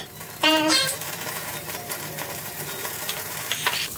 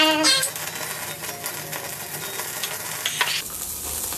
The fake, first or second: first